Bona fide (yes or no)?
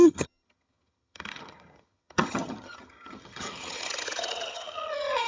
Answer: no